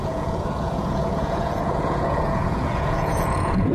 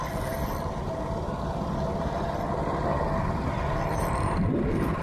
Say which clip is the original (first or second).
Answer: second